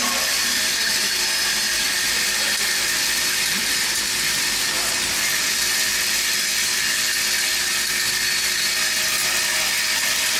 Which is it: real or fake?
real